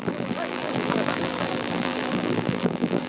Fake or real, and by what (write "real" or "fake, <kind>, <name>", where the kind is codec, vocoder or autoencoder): fake, vocoder, BigVGAN v2